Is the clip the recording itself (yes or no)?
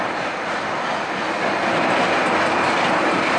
yes